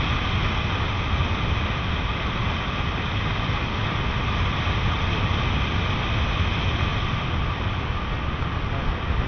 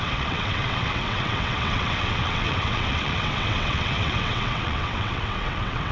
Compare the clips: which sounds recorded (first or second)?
first